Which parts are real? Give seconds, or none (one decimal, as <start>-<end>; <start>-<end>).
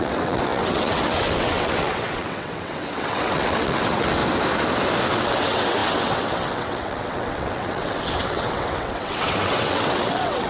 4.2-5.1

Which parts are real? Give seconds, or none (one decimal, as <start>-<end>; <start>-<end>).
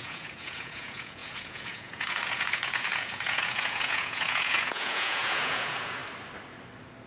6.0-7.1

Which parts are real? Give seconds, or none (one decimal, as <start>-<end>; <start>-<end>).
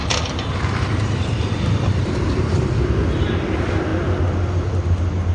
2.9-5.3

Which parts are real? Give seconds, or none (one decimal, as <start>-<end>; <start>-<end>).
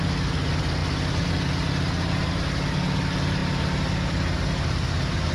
0.0-5.3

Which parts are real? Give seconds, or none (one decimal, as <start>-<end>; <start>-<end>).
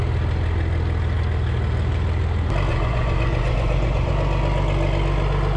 0.0-2.7; 4.1-5.6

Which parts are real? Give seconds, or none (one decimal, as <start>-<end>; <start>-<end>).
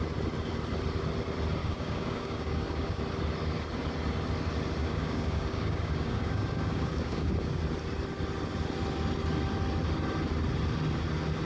0.0-1.6; 3.0-4.8; 7.6-11.5